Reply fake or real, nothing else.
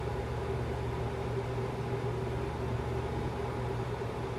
real